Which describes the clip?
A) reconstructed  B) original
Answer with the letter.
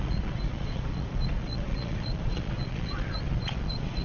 A